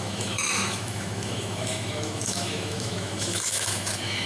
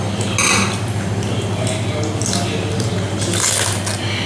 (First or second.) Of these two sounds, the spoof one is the first